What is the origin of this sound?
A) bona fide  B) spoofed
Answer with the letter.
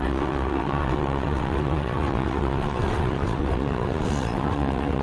B